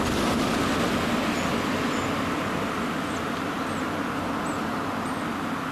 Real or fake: real